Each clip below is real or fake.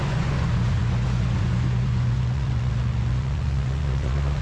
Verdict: fake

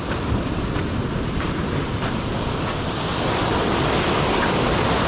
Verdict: real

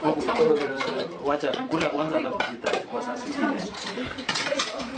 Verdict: fake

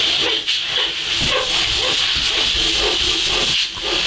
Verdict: real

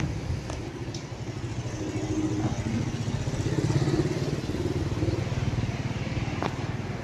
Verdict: real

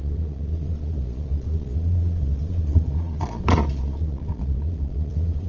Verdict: fake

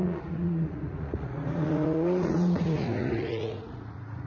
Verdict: fake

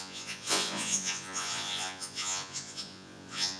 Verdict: fake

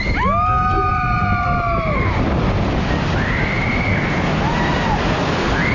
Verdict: real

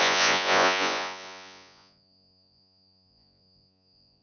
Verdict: fake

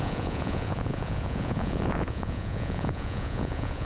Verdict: fake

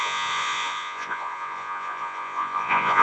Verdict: fake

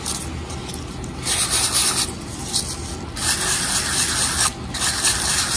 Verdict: real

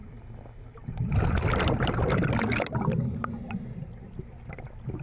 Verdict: real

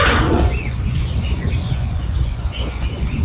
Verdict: fake